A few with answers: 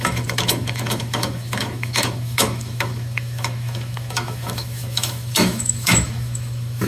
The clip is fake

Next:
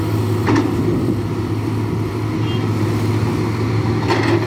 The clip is real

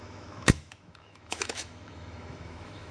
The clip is fake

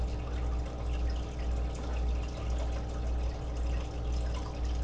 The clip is real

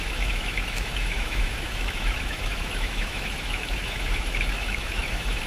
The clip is fake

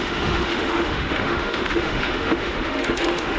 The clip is fake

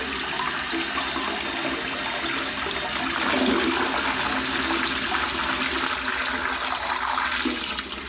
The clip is real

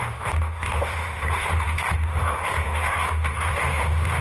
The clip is fake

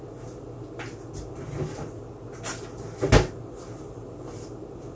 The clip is real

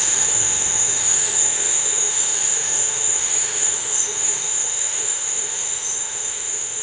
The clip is fake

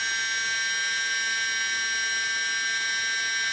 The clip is real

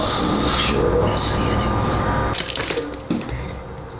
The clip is real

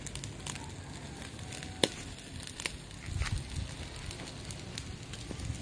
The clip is real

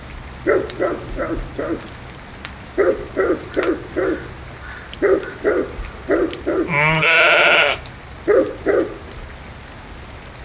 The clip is real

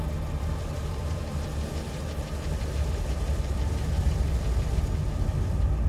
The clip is real